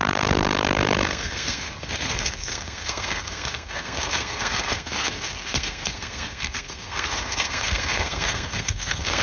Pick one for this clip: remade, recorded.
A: remade